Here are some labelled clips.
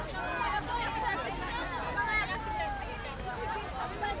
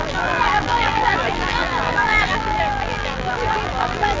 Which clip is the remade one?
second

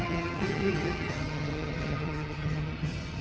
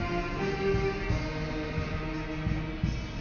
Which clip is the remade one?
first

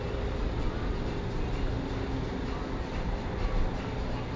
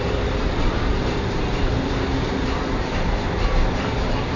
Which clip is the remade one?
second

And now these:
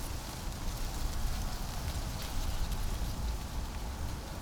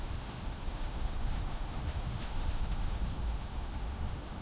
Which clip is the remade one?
second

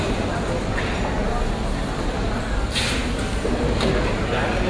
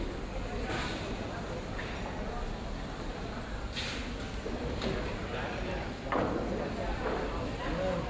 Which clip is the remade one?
second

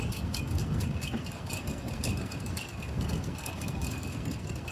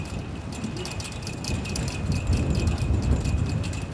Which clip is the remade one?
first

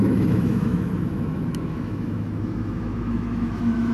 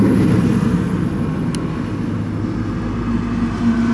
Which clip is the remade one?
first